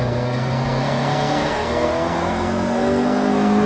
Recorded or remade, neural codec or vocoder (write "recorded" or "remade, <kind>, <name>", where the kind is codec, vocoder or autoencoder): remade, codec, SNAC